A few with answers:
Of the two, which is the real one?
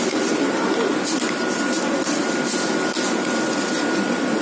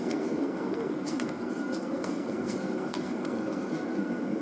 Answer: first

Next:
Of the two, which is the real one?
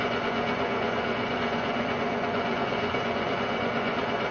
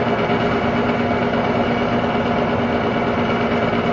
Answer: second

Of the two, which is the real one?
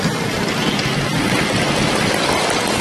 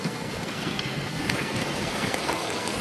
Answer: first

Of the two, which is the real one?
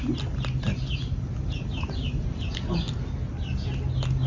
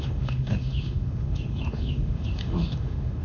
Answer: first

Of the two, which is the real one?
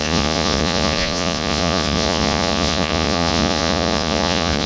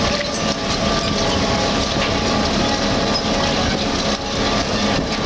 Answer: second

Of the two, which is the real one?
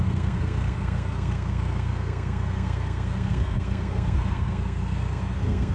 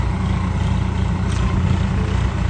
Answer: second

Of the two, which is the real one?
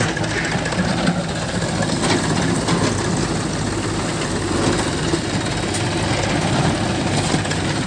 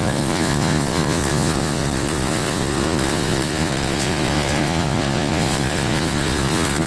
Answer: first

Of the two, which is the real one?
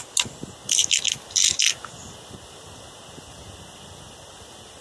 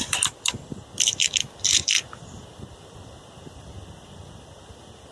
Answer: first